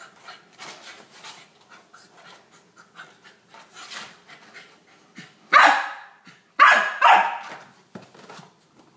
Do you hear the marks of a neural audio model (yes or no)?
no